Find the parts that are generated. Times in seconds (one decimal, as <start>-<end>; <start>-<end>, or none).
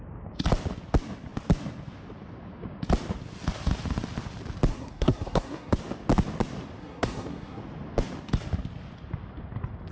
4.7-5.7; 6.8-7.6